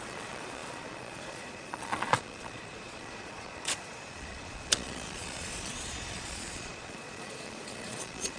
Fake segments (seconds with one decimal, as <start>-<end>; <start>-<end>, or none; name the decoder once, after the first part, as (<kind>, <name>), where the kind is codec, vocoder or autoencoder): 0.0-8.4 (vocoder, Vocos)

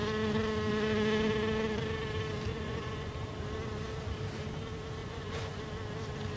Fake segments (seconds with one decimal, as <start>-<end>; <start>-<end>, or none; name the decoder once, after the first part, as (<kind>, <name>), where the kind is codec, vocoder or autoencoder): 2.5-3.1 (vocoder, Vocos); 5.0-5.6

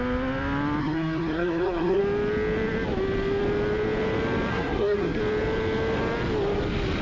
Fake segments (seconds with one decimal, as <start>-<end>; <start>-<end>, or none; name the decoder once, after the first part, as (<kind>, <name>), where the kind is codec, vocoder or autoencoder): 0.8-2.0 (codec, SNAC); 4.5-5.2

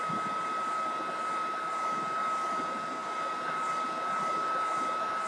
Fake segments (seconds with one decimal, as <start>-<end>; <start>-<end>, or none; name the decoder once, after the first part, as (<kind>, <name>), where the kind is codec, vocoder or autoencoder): none

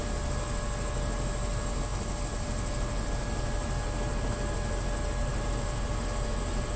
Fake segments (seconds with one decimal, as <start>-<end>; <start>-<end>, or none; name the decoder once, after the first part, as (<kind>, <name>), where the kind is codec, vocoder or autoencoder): 5.3-5.9 (vocoder, BigVGAN v2)

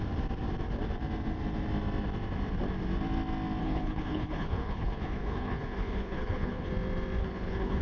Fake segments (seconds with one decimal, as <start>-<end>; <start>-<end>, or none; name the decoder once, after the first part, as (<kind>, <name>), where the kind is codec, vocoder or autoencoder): 3.6-6.7 (codec, HILCodec); 7.2-7.8

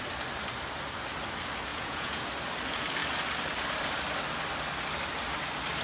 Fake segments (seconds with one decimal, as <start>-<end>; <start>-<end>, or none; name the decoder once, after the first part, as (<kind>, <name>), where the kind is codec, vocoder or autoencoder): 1.7-2.3 (vocoder, Vocos)

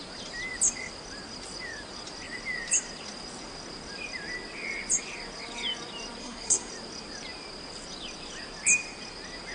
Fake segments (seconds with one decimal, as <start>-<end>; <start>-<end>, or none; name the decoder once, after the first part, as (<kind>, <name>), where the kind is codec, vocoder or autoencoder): 6.2-6.7 (codec, SNAC)